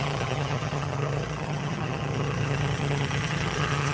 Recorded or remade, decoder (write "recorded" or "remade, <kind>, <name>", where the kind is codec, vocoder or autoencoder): remade, vocoder, HiFi-GAN